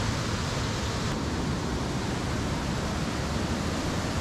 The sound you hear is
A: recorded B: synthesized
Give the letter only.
A